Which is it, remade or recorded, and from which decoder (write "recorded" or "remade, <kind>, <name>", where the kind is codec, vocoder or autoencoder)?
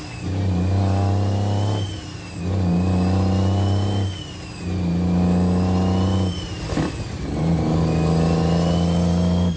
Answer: recorded